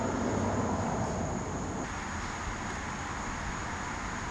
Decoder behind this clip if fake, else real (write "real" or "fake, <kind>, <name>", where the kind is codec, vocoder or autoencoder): real